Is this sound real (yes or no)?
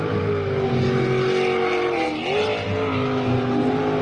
yes